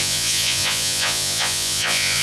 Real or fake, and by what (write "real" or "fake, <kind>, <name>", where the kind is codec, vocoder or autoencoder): fake, vocoder, Vocos